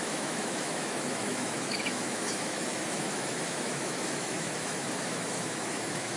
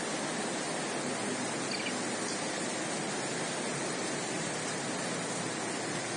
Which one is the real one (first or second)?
second